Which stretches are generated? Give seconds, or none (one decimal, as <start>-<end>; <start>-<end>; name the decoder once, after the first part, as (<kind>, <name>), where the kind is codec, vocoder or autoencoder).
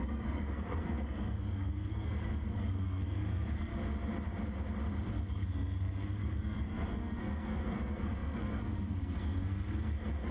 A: 0.0-3.7 (codec, SNAC); 5.1-10.3